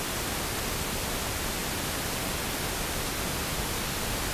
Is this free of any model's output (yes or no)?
yes